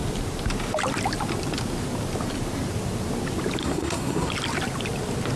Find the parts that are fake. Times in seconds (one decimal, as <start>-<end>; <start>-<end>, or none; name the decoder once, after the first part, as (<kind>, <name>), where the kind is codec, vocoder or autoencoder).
3.6-4.3 (codec, SNAC)